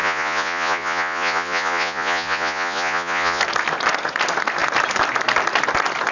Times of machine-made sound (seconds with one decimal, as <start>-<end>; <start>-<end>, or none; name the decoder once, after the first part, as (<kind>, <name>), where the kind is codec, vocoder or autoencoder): 0.0-3.4 (vocoder, Vocos)